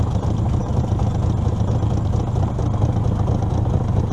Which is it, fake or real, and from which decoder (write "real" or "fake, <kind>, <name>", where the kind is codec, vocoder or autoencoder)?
real